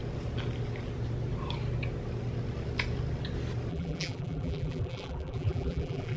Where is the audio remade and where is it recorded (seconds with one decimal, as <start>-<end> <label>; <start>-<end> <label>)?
0.0-3.7 recorded; 3.7-6.2 remade